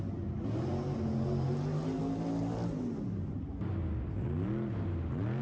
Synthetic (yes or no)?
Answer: no